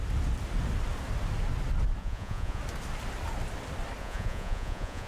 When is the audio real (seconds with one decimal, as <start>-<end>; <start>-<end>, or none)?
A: 0.0-2.0; 2.6-4.0